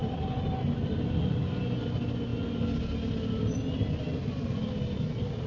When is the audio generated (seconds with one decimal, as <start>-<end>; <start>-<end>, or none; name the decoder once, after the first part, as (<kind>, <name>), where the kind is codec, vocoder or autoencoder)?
none